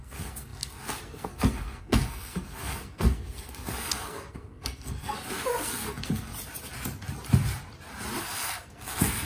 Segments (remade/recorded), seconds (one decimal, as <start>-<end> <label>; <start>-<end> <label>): 0.0-6.3 remade; 6.3-8.2 recorded; 8.2-9.2 remade